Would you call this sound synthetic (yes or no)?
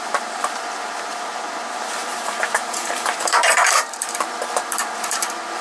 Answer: yes